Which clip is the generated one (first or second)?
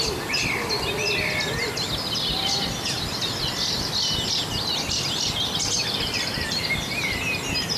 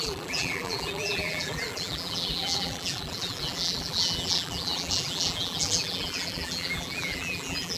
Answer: second